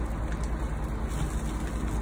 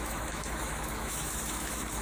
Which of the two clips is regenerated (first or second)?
second